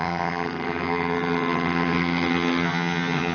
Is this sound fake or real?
fake